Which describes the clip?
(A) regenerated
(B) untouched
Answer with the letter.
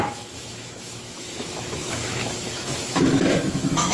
A